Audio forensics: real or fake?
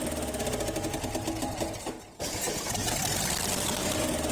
real